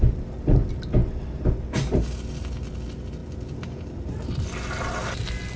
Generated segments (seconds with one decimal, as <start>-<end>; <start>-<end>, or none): none